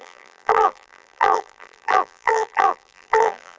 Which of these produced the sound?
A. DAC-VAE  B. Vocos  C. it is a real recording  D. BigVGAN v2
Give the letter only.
D